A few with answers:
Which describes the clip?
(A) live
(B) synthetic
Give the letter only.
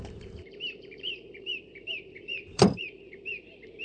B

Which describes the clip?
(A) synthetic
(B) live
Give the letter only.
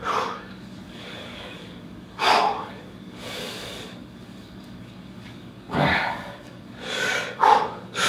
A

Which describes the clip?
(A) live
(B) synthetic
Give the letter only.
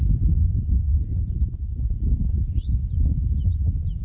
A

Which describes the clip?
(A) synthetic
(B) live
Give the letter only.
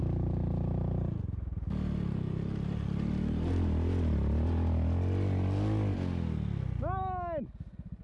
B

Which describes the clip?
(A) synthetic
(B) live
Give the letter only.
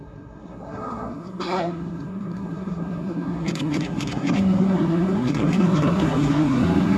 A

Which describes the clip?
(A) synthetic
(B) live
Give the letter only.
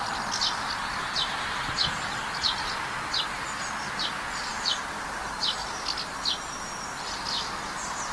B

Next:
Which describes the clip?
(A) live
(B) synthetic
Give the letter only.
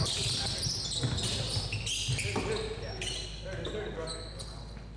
A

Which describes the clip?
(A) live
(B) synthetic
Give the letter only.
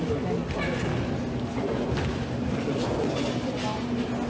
A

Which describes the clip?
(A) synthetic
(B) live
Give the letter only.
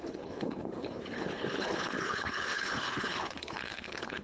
A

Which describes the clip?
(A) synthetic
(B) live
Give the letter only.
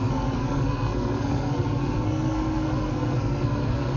A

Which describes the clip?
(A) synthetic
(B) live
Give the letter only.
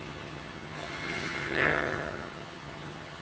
A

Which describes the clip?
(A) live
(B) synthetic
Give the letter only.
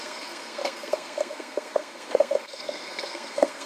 B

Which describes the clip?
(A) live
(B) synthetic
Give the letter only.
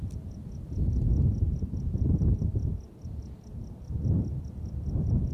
A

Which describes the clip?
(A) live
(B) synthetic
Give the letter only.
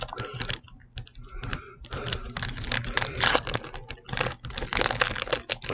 A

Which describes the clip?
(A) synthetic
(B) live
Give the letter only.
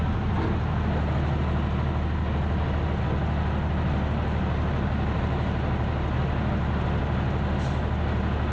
B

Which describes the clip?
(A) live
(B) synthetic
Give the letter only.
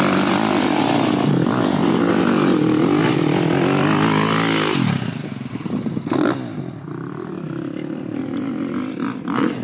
A